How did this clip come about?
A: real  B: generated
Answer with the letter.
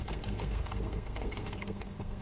B